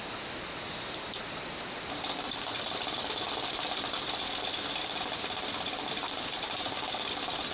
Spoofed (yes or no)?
yes